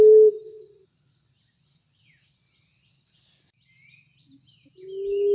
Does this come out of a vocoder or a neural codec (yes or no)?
no